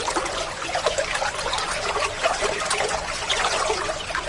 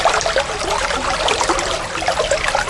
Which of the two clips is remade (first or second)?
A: first